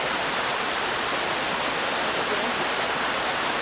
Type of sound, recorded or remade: recorded